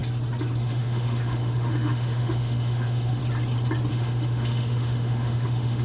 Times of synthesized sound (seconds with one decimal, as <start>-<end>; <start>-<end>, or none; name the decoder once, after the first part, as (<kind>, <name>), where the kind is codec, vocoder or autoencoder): 0.6-3.2 (autoencoder, DAC-VAE); 3.9-5.8